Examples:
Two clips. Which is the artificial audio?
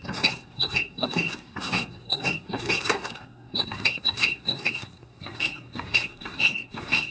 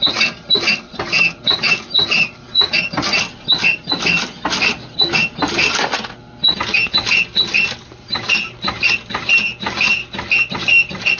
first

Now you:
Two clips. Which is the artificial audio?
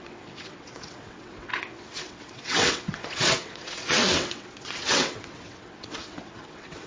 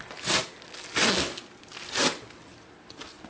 first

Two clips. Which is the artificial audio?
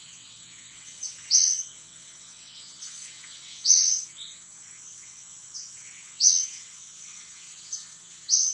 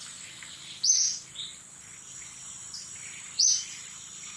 first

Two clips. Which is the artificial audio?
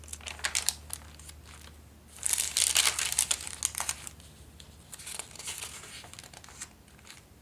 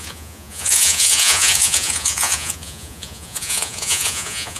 second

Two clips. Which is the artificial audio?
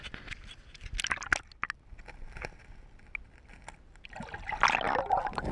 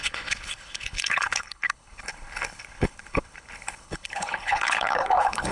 second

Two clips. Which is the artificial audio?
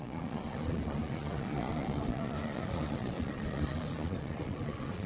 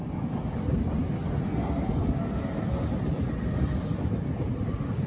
first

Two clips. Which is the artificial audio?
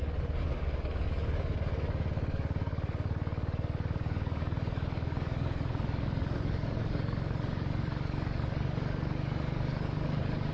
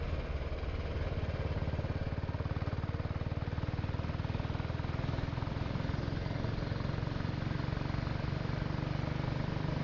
first